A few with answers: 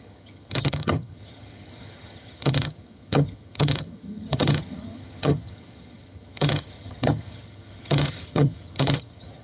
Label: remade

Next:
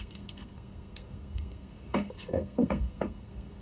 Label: remade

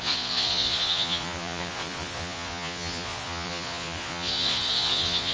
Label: remade